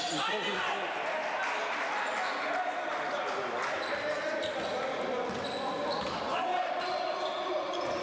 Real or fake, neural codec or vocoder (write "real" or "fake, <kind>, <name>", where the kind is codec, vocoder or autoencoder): real